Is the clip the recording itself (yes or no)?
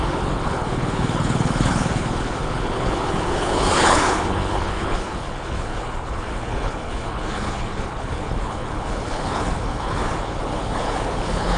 no